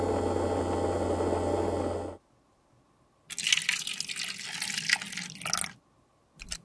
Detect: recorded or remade recorded